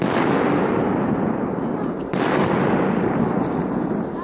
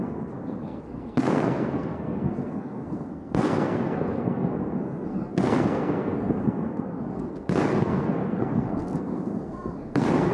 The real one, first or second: first